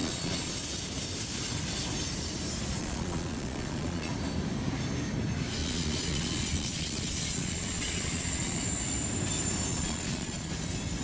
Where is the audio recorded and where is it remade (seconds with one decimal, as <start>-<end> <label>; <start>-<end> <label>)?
0.0-0.5 remade; 0.5-2.8 recorded; 2.8-4.1 remade; 4.1-5.6 recorded; 5.6-8.6 remade; 8.6-9.7 recorded; 9.7-10.5 remade; 10.5-11.0 recorded